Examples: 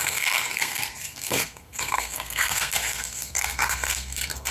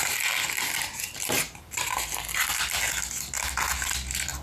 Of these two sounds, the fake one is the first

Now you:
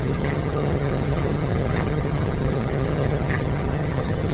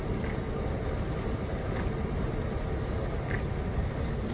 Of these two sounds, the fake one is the first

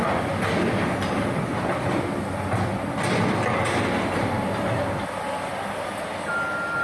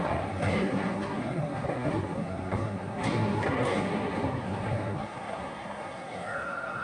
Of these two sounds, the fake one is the second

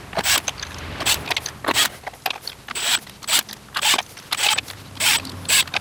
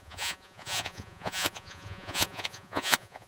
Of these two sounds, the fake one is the second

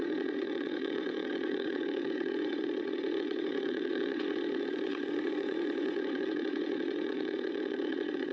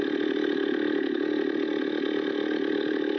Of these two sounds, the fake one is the first